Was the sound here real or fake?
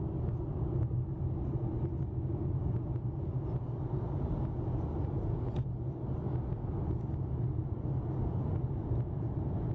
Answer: real